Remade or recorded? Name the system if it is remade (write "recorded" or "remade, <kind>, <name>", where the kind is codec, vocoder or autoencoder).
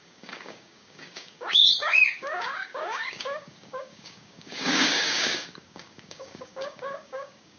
remade, codec, DAC